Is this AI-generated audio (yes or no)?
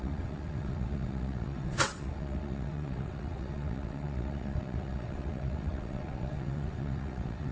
yes